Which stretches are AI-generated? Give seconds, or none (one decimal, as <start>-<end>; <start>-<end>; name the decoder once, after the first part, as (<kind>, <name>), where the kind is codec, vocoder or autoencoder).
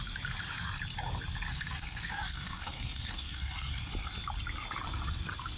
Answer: 1.5-3.9 (codec, SNAC)